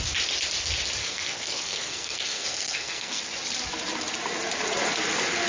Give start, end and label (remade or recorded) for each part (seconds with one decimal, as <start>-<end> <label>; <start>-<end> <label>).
0.0-1.0 recorded; 1.0-3.2 remade; 3.2-5.5 recorded